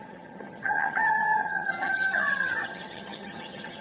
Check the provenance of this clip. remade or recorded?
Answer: remade